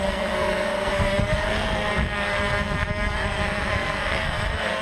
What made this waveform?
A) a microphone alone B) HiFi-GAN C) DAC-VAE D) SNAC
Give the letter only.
D